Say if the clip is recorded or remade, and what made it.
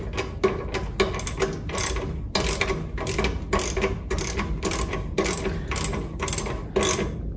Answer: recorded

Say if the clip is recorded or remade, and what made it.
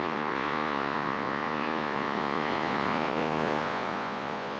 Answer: remade, vocoder, Vocos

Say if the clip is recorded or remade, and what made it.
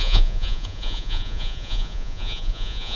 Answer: remade, vocoder, Vocos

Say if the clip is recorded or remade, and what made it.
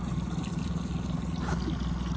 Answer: recorded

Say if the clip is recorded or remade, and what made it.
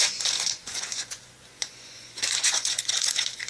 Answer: remade, vocoder, Vocos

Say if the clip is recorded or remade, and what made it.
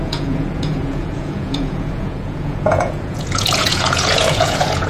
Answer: remade, vocoder, Vocos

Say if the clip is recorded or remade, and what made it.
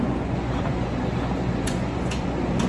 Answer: remade, vocoder, Vocos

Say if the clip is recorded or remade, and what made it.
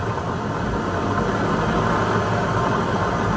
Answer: recorded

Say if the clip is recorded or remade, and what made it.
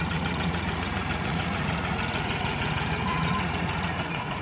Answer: remade, vocoder, Vocos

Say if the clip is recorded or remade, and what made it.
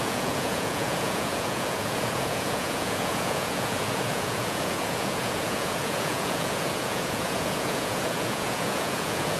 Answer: remade, vocoder, Vocos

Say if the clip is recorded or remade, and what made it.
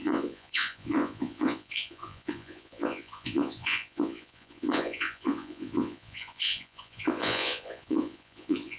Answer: remade, vocoder, Vocos